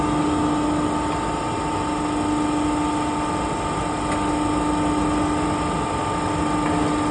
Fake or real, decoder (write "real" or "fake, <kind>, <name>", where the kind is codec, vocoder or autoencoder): real